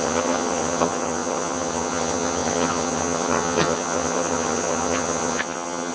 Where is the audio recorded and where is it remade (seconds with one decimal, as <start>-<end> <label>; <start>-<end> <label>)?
0.0-5.9 remade